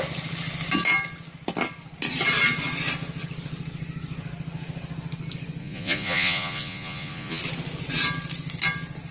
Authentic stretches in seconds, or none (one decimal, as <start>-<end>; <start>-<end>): 0.0-5.6; 7.4-9.1